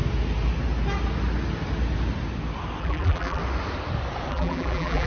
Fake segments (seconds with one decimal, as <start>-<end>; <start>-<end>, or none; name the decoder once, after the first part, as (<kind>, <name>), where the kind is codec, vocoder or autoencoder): 2.8-3.4 (vocoder, BigVGAN v2); 4.3-5.1

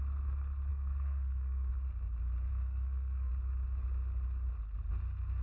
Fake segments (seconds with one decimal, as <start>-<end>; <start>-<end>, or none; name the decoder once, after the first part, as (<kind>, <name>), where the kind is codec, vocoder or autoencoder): 0.7-1.7 (codec, SNAC); 2.5-3.3